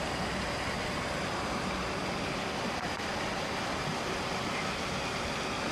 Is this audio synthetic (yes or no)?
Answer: no